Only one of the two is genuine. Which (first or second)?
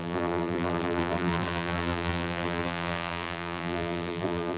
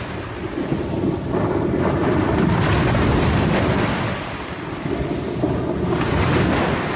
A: second